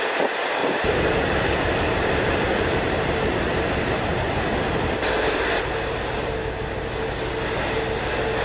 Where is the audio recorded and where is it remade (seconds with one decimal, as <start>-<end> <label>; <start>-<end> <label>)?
0.0-0.6 recorded; 0.6-5.6 remade; 5.6-8.4 recorded